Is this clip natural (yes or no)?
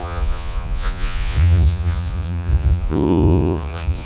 no